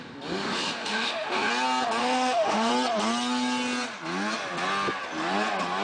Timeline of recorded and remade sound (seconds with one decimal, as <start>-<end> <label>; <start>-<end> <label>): 0.0-0.4 recorded; 0.4-1.5 remade; 1.5-2.0 recorded; 2.0-2.7 remade; 2.7-5.8 recorded